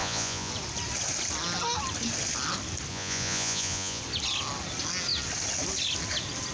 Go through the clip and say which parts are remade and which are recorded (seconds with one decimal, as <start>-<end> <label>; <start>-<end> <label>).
0.0-0.5 remade; 0.5-2.9 recorded; 2.9-4.0 remade; 4.0-6.5 recorded